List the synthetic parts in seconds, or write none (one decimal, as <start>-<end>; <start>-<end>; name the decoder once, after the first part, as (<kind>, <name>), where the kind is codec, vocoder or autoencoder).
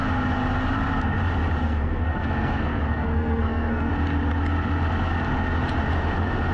1.6-3.9 (codec, SNAC)